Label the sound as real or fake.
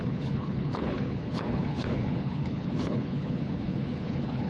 fake